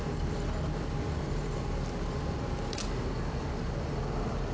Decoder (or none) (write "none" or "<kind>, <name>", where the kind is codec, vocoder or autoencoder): none